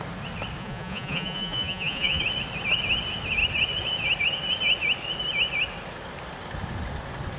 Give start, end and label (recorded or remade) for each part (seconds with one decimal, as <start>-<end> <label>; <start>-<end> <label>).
0.0-0.6 recorded; 0.6-2.2 remade; 2.2-7.4 recorded